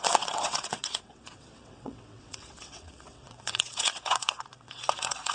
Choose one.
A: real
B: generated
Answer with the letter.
B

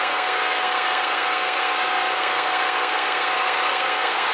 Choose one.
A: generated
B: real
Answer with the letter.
A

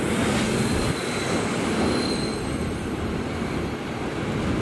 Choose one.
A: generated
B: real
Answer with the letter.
B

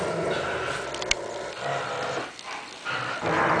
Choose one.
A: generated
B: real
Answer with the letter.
B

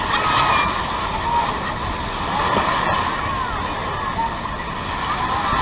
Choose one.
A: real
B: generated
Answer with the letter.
A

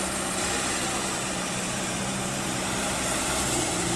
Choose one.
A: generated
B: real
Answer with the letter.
A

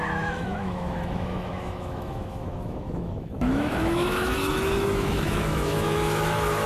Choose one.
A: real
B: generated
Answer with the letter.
B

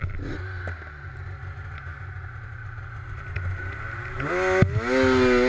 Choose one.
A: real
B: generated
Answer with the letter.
A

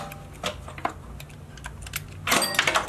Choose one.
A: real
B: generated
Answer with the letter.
A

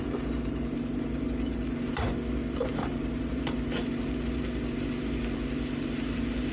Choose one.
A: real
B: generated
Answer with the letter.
B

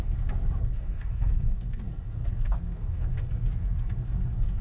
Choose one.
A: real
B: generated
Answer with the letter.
B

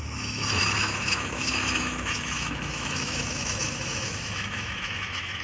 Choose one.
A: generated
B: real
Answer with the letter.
A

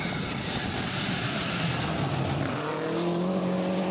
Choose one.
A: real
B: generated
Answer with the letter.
A